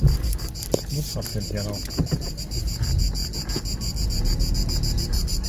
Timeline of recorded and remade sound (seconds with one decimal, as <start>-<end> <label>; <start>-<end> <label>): 0.0-5.5 recorded